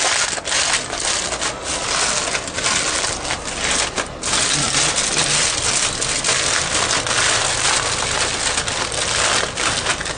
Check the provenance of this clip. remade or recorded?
recorded